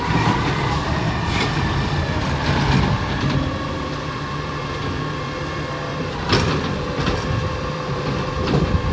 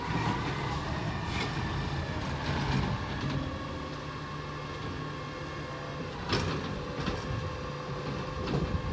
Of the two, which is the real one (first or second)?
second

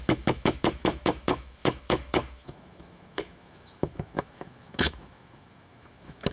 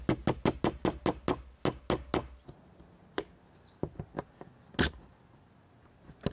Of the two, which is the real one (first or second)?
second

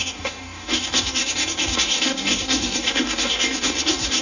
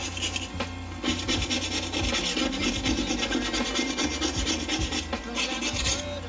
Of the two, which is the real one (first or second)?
second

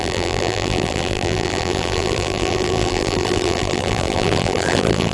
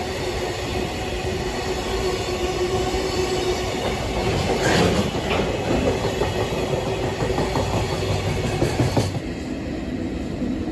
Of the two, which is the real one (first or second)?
second